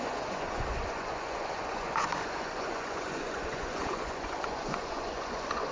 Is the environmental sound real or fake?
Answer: fake